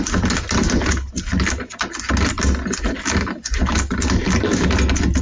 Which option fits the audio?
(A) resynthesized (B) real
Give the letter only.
B